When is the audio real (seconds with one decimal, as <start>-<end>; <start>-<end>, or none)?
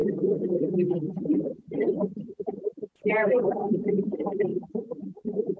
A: 0.0-5.6